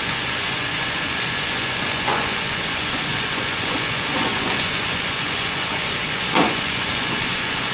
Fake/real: fake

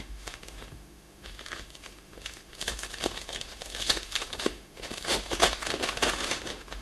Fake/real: fake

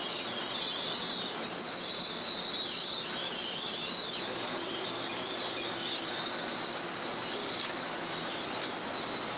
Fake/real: real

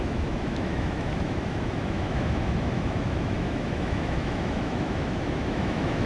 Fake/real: fake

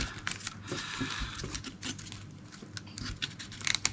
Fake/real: real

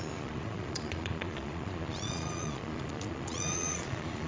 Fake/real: fake